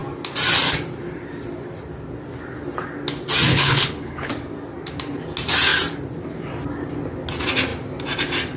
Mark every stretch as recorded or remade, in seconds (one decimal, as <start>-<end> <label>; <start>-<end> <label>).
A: 0.0-3.5 recorded; 3.5-4.3 remade; 4.3-8.6 recorded